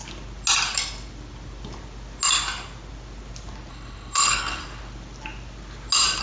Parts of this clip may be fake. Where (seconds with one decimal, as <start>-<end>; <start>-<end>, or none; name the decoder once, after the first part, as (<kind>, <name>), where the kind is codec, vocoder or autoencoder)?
3.7-4.6 (codec, HILCodec)